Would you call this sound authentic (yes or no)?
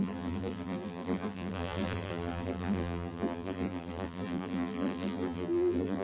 no